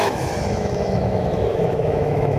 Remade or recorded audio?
remade